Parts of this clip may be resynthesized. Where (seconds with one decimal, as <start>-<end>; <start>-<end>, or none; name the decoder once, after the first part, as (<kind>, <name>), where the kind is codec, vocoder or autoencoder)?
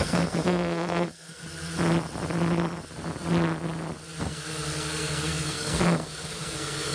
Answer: 0.0-1.4 (codec, SNAC); 4.2-6.9